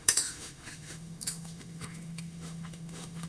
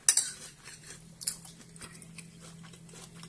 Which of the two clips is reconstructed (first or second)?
first